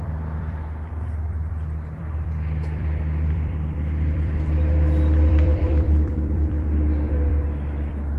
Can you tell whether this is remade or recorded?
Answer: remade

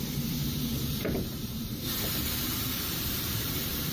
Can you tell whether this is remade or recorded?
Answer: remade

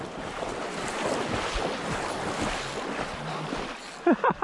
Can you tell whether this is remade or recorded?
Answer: recorded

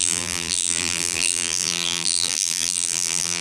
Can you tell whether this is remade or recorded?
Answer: remade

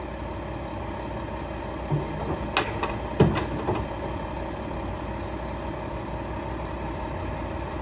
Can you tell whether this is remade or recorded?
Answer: recorded